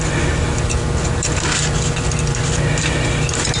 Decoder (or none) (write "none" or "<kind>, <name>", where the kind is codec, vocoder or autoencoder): vocoder, BigVGAN v2